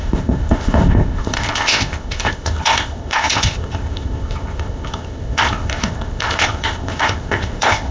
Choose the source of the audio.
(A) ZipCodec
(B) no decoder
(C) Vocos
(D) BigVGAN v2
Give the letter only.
A